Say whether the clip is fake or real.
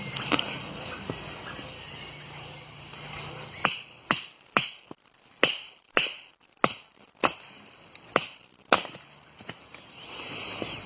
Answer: real